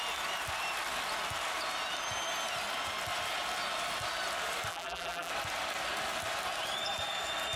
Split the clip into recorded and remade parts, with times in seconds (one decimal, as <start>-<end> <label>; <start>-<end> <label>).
0.0-4.7 recorded; 4.7-5.3 remade; 5.3-7.6 recorded